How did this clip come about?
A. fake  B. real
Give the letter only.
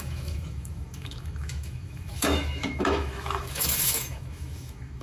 A